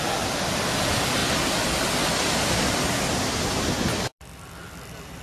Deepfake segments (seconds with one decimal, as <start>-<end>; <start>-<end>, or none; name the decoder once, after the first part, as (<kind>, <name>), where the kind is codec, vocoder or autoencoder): none